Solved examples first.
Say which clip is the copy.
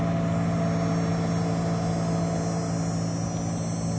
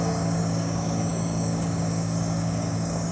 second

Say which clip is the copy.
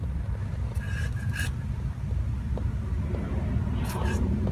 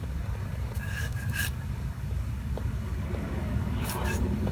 second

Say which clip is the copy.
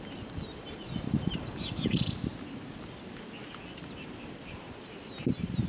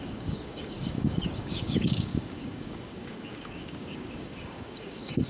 second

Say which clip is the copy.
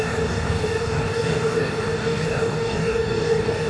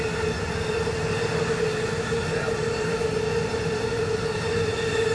first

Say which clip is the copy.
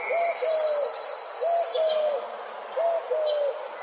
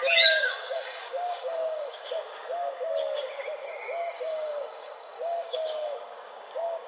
second